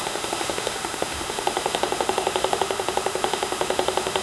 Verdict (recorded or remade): remade